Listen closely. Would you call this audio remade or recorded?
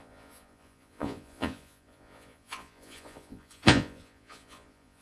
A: remade